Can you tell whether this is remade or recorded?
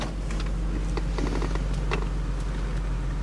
recorded